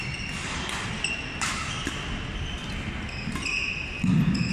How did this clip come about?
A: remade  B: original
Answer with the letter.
B